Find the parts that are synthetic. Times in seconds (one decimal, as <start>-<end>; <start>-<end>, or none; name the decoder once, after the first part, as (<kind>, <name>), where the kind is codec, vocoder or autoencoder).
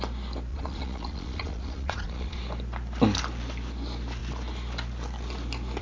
0.5-2.4 (vocoder, Vocos)